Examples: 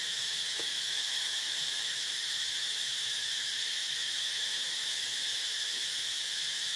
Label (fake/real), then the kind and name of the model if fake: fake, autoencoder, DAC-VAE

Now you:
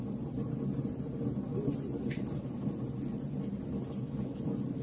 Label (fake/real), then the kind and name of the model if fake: real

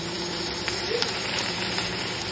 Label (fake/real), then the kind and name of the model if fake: fake, vocoder, BigVGAN v2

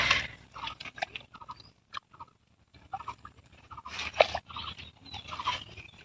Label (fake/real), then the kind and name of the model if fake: fake, vocoder, BigVGAN v2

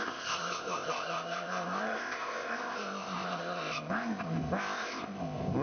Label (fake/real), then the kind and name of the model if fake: fake, codec, ZipCodec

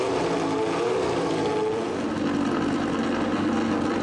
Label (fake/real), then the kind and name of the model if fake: real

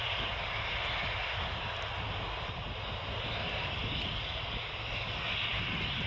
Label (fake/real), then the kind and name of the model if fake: real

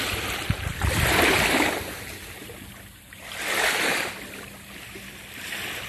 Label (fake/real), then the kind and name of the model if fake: real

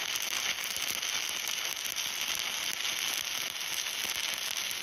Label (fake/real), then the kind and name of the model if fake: real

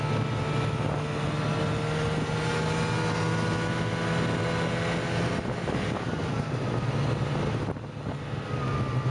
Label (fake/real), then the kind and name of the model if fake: real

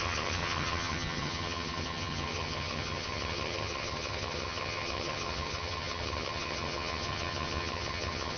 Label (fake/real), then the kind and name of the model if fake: fake, vocoder, HiFi-GAN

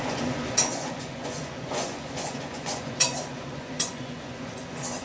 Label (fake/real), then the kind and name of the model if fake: fake, vocoder, Vocos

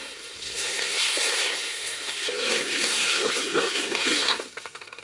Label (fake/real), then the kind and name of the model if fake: fake, codec, SNAC